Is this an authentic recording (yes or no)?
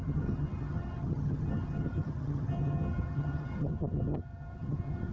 no